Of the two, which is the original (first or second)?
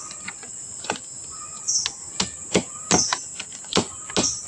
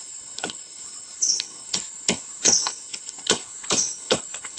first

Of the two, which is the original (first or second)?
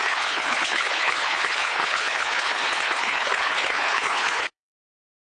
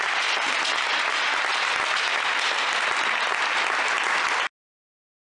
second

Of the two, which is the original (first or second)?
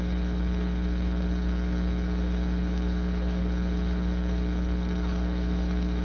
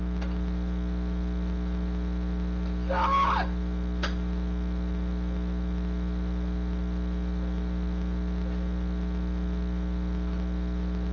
second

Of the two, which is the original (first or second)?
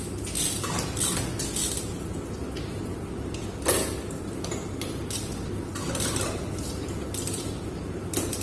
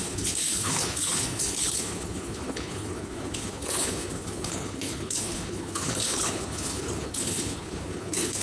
first